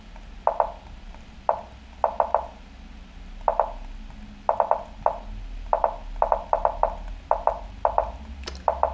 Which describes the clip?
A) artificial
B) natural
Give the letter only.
B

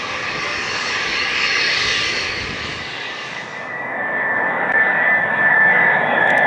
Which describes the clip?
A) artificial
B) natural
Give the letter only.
A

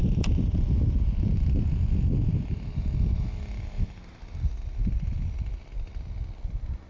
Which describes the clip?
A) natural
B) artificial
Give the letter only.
A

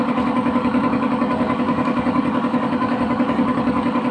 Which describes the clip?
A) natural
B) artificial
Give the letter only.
B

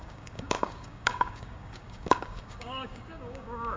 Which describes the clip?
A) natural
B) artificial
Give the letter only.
B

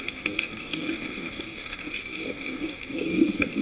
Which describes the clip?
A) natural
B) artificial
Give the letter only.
B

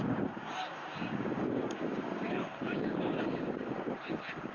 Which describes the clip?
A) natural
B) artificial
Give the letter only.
B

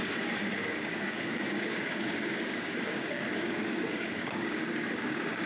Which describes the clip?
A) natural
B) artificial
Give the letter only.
B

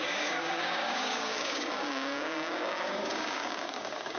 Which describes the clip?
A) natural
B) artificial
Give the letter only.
B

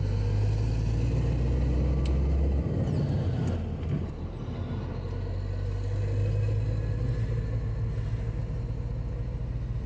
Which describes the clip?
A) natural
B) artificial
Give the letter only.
A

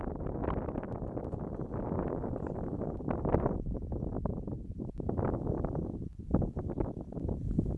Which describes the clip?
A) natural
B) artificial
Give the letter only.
A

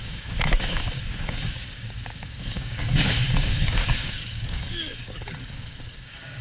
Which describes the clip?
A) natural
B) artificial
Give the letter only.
B